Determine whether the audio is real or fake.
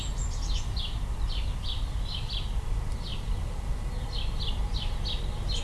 real